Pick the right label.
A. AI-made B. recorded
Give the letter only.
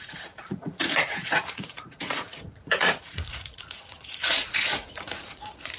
A